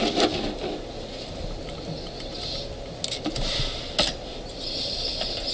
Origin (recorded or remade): recorded